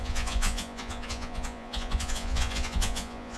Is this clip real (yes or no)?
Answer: no